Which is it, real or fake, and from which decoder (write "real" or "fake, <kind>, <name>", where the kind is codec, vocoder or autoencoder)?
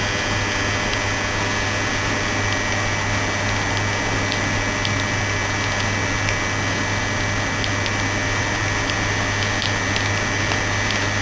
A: real